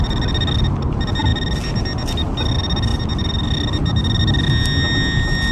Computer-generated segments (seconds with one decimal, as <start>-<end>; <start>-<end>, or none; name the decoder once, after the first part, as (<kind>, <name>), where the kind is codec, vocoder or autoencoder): none